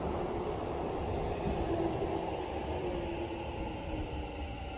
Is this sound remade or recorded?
recorded